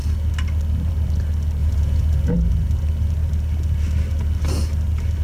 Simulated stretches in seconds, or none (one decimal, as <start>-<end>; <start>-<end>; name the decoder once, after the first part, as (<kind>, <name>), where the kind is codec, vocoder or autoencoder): 1.6-2.4 (vocoder, Vocos)